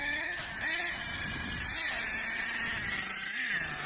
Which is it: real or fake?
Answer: real